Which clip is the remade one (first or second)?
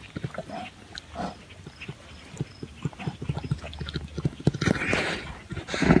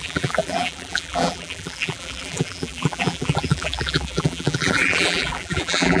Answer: second